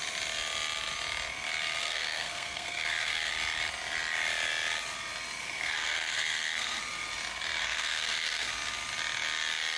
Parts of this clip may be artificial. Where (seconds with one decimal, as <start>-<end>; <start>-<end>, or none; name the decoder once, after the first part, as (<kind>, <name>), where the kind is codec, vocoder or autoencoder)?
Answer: 1.8-3.3 (codec, SNAC); 5.4-6.8; 7.6-8.5